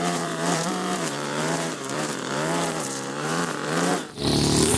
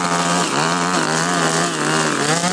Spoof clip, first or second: first